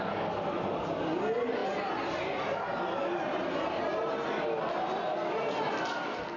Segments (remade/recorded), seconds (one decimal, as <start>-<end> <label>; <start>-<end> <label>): 0.0-6.4 recorded